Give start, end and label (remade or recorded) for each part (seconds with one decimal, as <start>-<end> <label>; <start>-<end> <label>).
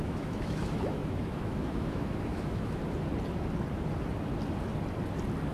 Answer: 0.0-2.8 remade; 2.8-5.5 recorded